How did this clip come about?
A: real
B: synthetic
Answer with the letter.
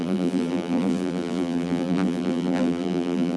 B